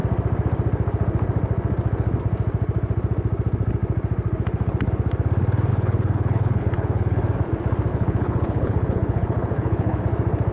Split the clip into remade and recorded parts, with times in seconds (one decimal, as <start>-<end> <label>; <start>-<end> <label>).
0.0-5.7 recorded; 5.7-7.2 remade; 7.2-7.9 recorded; 7.9-10.0 remade; 10.0-10.5 recorded